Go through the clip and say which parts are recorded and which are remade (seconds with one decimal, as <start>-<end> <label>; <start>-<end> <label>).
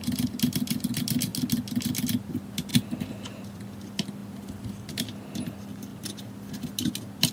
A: 0.0-2.7 recorded; 2.7-3.6 remade; 3.6-7.3 recorded